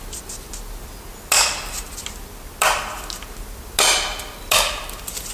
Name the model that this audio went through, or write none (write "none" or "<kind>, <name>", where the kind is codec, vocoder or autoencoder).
none